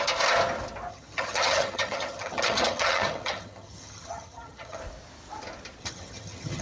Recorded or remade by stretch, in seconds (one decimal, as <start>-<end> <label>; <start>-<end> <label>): 0.0-0.9 recorded; 0.9-4.8 remade; 4.8-5.8 recorded; 5.8-6.6 remade